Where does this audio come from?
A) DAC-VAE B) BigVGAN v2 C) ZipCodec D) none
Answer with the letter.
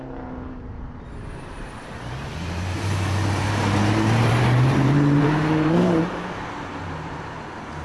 B